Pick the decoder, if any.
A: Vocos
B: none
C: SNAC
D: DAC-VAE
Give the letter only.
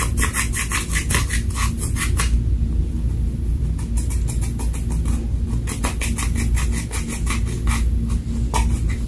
B